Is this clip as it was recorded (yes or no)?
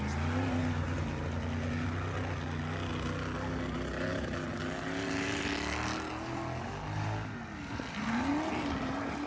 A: yes